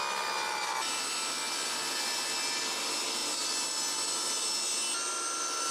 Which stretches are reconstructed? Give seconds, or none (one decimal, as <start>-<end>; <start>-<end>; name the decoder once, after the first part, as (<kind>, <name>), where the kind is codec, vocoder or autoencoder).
none